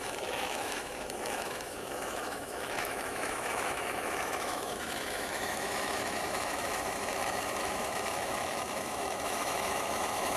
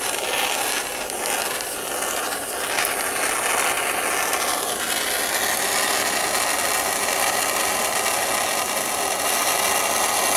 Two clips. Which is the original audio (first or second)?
second